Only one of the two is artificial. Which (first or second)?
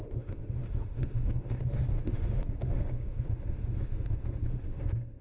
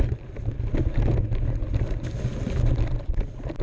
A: first